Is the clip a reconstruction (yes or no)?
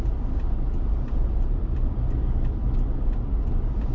no